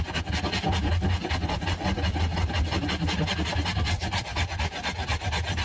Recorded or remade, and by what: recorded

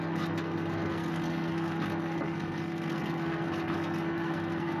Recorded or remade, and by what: remade, codec, SNAC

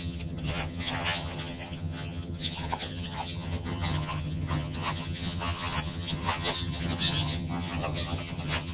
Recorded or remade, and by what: remade, vocoder, HiFi-GAN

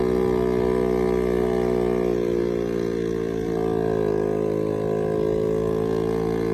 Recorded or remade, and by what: recorded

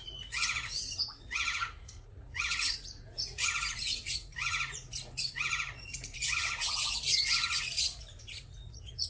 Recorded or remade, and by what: remade, vocoder, Vocos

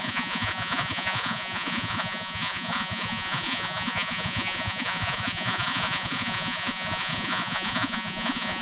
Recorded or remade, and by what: remade, vocoder, Vocos